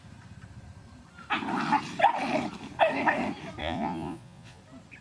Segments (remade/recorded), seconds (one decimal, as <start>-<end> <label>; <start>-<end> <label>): 0.0-3.6 recorded; 3.6-4.6 remade; 4.6-5.0 recorded